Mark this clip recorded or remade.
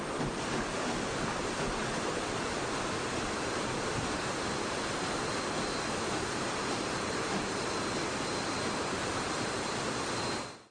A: recorded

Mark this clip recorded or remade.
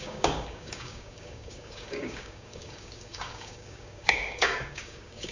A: remade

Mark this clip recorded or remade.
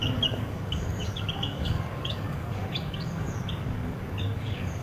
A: remade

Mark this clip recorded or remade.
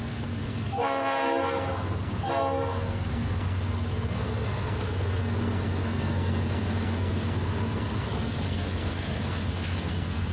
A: remade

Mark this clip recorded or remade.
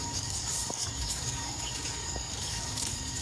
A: remade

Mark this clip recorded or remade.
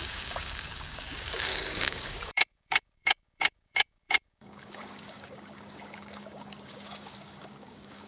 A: remade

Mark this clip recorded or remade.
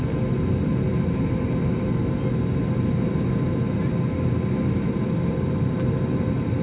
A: recorded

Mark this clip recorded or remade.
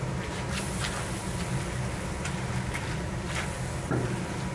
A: recorded